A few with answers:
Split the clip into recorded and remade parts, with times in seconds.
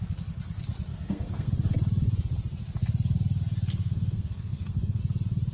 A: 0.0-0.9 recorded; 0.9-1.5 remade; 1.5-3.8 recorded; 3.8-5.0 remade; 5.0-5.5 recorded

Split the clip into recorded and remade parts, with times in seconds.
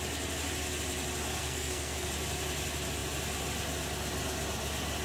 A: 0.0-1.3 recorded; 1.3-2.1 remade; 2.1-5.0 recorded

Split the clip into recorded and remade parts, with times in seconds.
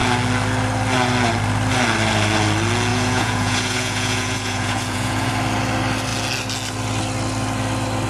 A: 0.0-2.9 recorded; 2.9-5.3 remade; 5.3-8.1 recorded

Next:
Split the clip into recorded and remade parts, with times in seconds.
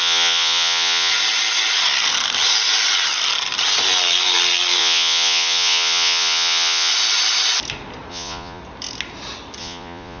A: 0.0-1.1 remade; 1.1-4.8 recorded; 4.8-6.9 remade; 6.9-8.1 recorded; 8.1-8.6 remade; 8.6-9.6 recorded; 9.6-10.2 remade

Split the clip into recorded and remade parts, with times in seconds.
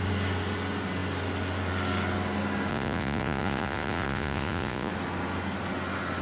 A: 0.0-2.7 recorded; 2.7-4.9 remade; 4.9-6.2 recorded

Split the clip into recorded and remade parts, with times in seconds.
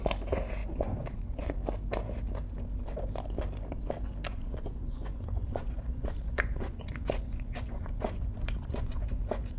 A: 0.0-0.6 recorded; 0.6-1.4 remade; 1.4-4.3 recorded; 4.3-9.6 remade